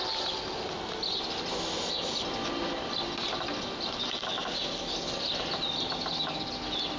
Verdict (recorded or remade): recorded